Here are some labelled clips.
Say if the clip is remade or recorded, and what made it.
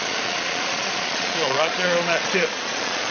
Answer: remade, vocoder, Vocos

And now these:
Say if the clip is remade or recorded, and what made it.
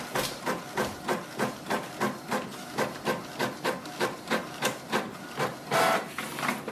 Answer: recorded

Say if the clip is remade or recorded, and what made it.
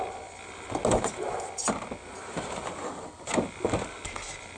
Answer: recorded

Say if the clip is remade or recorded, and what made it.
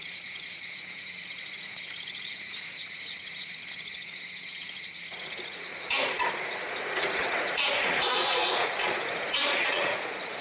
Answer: remade, vocoder, Vocos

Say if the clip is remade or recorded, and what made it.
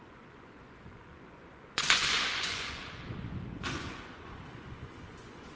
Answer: remade, vocoder, Vocos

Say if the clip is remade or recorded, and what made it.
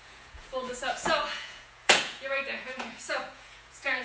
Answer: remade, vocoder, Vocos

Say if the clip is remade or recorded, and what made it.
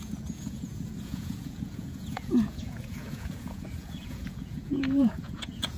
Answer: remade, vocoder, Vocos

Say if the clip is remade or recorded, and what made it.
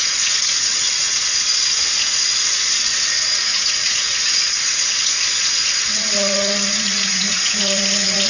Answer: remade, vocoder, Vocos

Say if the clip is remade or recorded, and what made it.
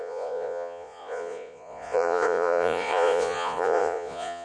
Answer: remade, vocoder, Vocos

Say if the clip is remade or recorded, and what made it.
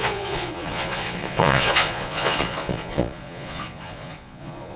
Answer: remade, vocoder, Vocos